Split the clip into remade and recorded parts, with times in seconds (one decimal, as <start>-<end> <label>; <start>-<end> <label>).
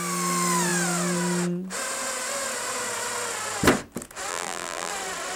0.0-4.3 recorded; 4.3-4.9 remade; 4.9-5.4 recorded